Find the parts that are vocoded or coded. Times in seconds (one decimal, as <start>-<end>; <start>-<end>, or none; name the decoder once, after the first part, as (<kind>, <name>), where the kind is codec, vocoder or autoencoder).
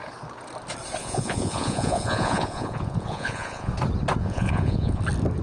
1.0-3.7 (vocoder, Vocos); 4.2-5.0